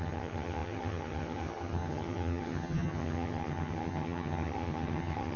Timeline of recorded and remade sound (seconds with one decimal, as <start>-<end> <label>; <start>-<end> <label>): 0.0-5.4 remade